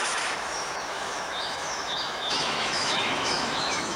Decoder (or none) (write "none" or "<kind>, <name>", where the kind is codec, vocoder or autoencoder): autoencoder, DAC-VAE